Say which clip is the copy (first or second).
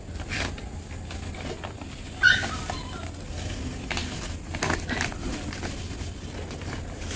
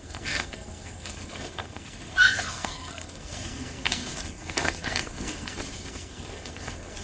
second